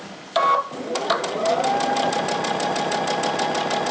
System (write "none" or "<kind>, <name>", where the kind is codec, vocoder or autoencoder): none